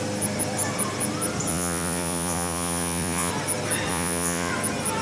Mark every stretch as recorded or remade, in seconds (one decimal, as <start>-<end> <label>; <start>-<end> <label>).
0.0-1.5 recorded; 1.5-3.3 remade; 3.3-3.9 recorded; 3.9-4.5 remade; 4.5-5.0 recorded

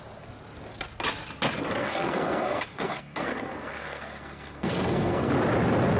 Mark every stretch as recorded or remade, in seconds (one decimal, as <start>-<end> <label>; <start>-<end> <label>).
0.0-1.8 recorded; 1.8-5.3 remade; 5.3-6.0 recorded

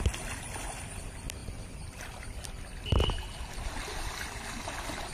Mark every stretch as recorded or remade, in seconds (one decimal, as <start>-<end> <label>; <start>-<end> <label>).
0.0-5.1 recorded

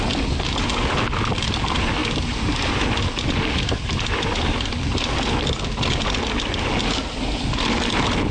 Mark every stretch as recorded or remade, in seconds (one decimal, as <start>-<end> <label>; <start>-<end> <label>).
0.0-8.3 recorded

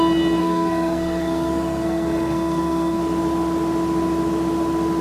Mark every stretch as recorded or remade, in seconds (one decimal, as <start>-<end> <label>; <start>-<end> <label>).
0.0-0.4 recorded; 0.4-3.0 remade; 3.0-5.0 recorded

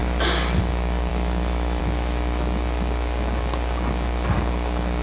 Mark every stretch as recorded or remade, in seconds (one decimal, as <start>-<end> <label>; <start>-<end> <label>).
0.0-1.1 recorded; 1.1-1.8 remade; 1.8-5.0 recorded